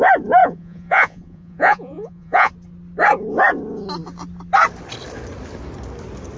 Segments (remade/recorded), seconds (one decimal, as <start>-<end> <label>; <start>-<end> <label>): 0.0-0.4 recorded; 0.4-2.5 remade; 2.5-6.4 recorded